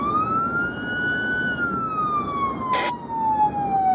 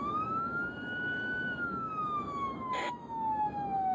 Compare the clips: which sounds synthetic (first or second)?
second